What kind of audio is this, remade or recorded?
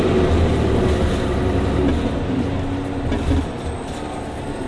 recorded